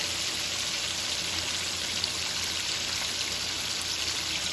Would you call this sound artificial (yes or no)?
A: no